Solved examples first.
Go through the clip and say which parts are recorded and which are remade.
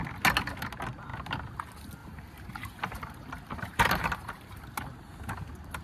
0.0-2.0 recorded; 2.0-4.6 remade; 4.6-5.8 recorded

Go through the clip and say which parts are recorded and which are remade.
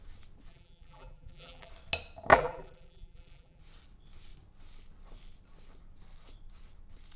0.0-0.5 recorded; 0.5-1.7 remade; 1.7-2.3 recorded; 2.3-3.6 remade; 3.6-7.2 recorded